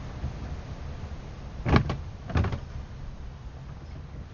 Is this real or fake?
real